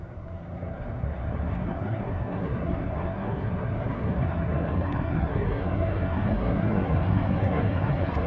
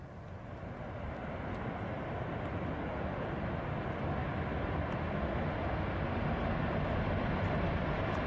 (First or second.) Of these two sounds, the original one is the second